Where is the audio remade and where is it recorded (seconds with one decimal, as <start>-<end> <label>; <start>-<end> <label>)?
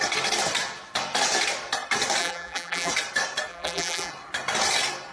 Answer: 0.0-2.2 recorded; 2.2-2.9 remade; 2.9-3.5 recorded; 3.5-4.1 remade; 4.1-5.1 recorded